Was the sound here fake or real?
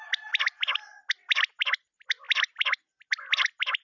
real